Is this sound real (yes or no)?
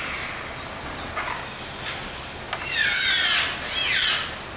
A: yes